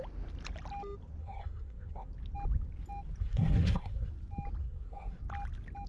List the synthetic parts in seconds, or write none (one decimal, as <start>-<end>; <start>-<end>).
1.2-2.1; 3.2-4.1; 4.6-5.2